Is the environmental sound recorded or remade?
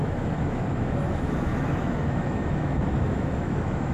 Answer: remade